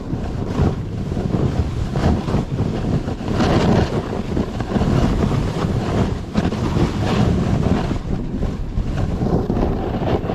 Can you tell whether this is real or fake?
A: real